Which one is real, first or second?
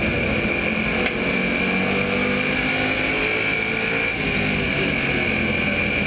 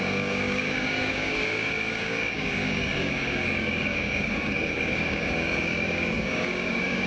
first